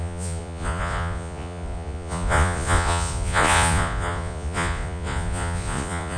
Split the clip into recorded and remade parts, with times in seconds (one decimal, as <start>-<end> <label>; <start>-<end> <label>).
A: 0.0-6.2 remade